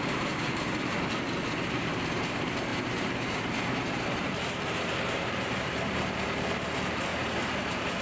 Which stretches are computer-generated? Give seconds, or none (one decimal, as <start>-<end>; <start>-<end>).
0.0-7.1; 7.6-8.0